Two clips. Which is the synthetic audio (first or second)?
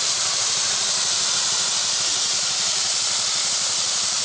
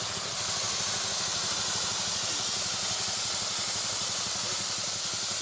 first